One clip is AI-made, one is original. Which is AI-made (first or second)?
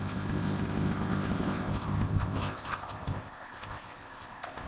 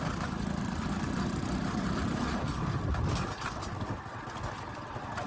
first